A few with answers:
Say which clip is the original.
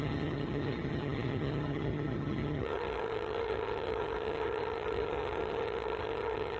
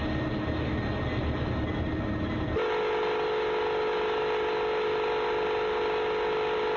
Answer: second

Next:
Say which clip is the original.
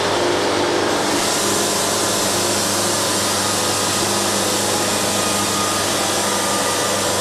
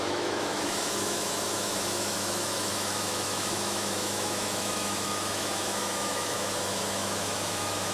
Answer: first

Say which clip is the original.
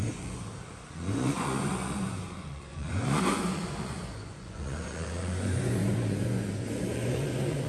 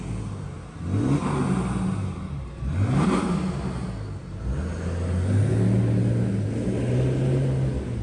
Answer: second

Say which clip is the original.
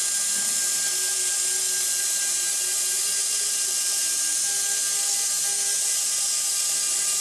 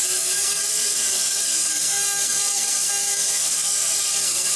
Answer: first